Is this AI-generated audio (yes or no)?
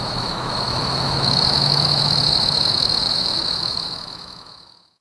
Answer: yes